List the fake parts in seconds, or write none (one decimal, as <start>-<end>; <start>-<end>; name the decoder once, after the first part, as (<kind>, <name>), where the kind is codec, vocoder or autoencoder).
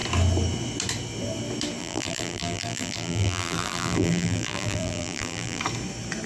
1.8-5.6 (vocoder, BigVGAN v2)